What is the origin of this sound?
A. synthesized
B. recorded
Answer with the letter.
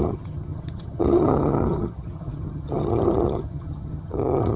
A